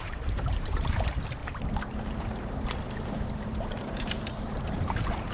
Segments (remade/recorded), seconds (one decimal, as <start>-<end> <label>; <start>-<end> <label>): 0.0-1.4 remade; 1.4-2.1 recorded; 2.1-5.3 remade